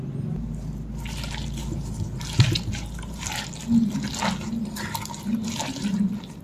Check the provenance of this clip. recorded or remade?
recorded